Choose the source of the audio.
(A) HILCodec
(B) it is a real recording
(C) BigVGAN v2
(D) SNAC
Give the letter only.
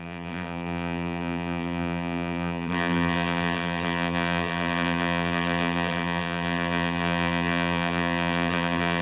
C